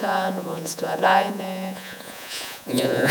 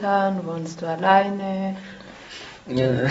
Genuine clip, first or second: second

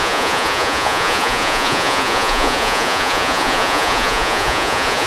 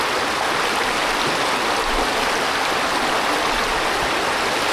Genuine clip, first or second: second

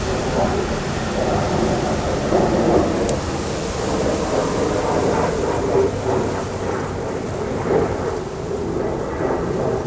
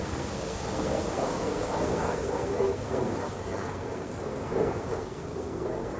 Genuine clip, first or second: first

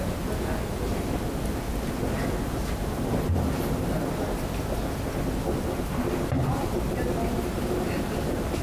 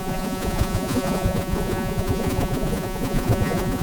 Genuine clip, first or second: first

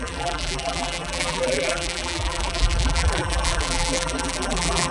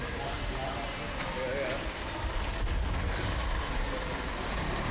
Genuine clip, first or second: second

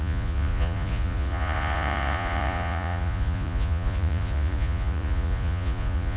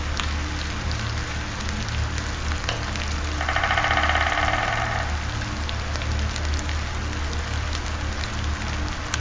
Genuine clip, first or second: second